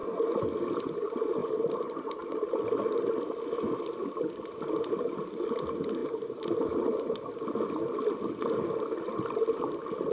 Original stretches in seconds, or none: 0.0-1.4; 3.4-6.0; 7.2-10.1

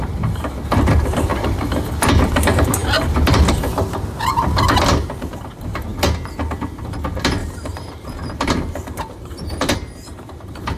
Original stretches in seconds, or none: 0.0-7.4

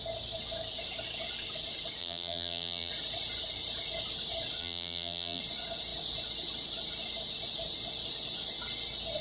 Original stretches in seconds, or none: 0.0-2.0; 2.9-4.6; 5.4-9.2